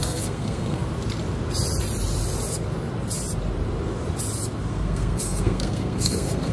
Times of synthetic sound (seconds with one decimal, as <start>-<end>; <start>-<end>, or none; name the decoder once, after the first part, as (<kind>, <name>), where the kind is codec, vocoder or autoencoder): 0.0-0.8 (codec, SNAC); 4.7-6.5